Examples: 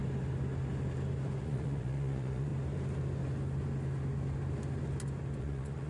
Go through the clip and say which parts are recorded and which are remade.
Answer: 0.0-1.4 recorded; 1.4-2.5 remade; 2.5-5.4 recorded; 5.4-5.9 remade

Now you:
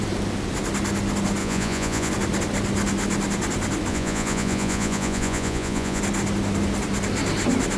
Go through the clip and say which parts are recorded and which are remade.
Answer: 0.0-1.4 recorded; 1.4-2.1 remade; 2.1-3.9 recorded; 3.9-6.0 remade; 6.0-7.8 recorded

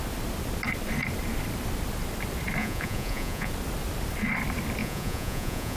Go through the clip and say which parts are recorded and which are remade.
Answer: 0.0-2.6 recorded; 2.6-3.5 remade; 3.5-4.8 recorded; 4.8-5.8 remade

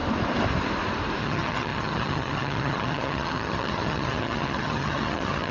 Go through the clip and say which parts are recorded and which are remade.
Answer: 0.0-1.2 recorded; 1.2-5.5 remade

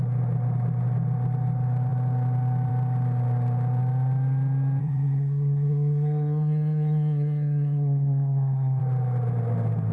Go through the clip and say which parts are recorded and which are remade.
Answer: 0.0-4.8 recorded; 4.8-8.8 remade; 8.8-9.9 recorded

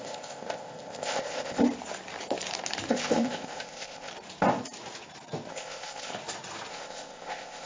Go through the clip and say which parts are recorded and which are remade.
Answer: 0.0-1.6 remade; 1.6-2.9 recorded; 2.9-4.1 remade; 4.1-5.5 recorded; 5.5-6.1 remade; 6.1-6.7 recorded; 6.7-7.7 remade

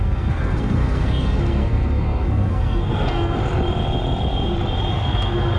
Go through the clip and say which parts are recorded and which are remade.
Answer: 0.0-3.4 remade; 3.4-4.9 recorded; 4.9-5.6 remade

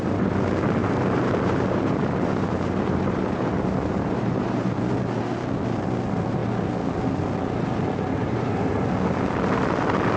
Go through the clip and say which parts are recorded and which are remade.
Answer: 0.0-0.8 recorded; 0.8-4.7 remade; 4.7-8.2 recorded; 8.2-8.9 remade; 8.9-10.2 recorded